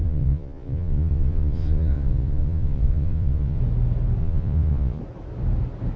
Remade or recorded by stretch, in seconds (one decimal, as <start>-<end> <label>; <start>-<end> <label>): 0.0-3.6 remade; 3.6-4.2 recorded; 4.2-5.0 remade; 5.0-6.0 recorded

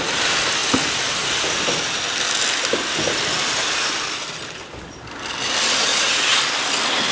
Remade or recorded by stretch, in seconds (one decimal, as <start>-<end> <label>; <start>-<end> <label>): 0.0-5.9 recorded; 5.9-6.4 remade; 6.4-7.1 recorded